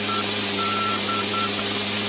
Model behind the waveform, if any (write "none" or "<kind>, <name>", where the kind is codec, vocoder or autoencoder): none